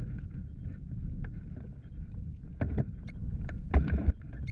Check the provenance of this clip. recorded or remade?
recorded